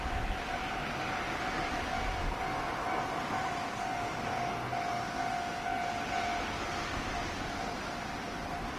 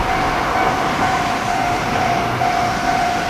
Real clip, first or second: first